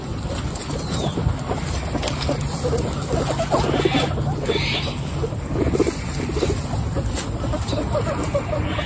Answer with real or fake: real